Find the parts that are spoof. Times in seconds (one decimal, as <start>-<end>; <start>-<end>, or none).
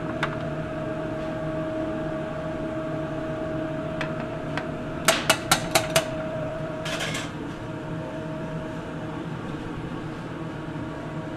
5.6-10.0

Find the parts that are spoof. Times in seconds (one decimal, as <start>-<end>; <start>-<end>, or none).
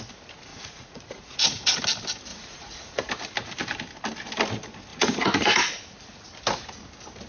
0.5-1.8; 2.3-3.1; 4.9-5.5